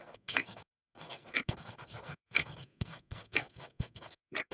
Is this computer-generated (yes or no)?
yes